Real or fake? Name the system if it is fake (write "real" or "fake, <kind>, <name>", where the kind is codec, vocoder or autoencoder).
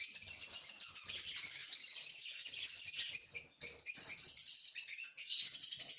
real